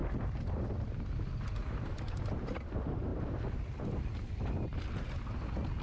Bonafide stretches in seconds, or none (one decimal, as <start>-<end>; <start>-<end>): 0.0-5.8